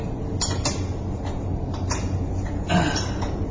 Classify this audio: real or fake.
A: real